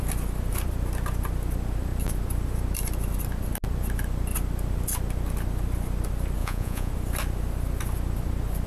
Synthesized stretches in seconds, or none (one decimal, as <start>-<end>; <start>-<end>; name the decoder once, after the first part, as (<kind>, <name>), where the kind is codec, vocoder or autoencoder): 6.4-6.9 (vocoder, Vocos)